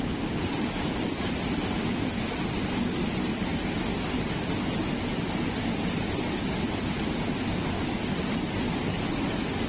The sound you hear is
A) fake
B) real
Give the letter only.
B